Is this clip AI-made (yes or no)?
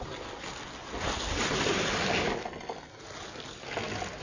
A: no